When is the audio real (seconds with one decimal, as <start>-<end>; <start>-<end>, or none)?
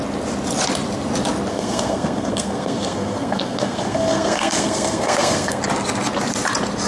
0.0-1.5; 5.6-6.9